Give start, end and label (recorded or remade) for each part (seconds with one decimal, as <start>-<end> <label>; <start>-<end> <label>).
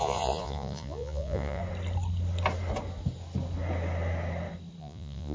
0.0-1.6 remade; 1.6-4.8 recorded; 4.8-5.3 remade